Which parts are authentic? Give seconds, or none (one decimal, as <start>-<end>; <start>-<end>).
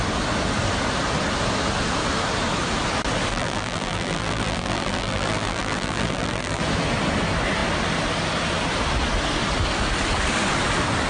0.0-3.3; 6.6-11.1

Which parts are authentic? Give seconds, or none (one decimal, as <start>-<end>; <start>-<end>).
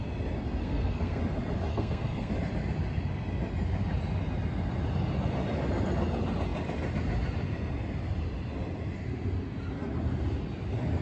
0.0-0.6; 1.2-1.7; 2.3-11.0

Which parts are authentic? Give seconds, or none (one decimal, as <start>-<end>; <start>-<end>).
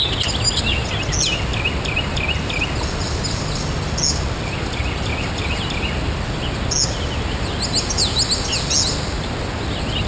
0.0-10.1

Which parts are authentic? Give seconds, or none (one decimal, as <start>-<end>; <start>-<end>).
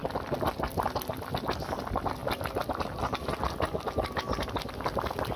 0.0-5.4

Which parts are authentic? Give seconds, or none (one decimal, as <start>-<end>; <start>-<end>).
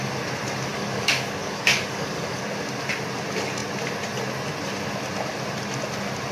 0.0-0.7; 2.4-6.3